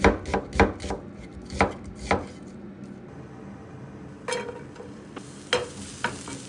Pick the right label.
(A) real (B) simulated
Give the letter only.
A